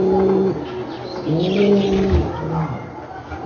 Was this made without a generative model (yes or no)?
yes